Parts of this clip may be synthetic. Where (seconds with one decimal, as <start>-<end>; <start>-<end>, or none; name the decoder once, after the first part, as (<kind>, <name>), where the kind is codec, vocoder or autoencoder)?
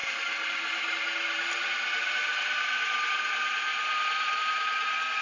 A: 0.0-5.2 (vocoder, BigVGAN v2)